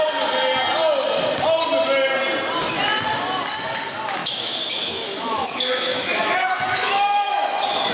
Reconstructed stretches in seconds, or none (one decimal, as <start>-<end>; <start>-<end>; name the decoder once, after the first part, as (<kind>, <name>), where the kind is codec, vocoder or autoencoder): 4.2-7.9 (autoencoder, DAC-VAE)